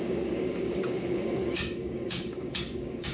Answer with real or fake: fake